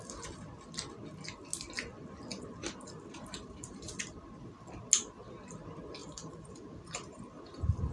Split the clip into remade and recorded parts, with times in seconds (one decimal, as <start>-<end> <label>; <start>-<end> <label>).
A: 0.0-2.3 recorded; 2.3-3.9 remade; 3.9-6.0 recorded; 6.0-7.9 remade